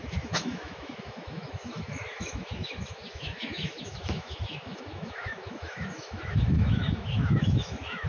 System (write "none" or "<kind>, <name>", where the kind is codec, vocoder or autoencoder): autoencoder, DAC-VAE